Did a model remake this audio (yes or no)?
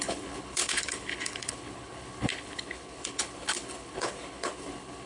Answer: yes